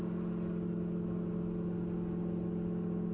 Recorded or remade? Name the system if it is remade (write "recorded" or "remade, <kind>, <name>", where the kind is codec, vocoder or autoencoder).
recorded